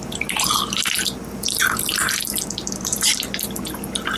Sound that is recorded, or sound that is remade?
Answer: recorded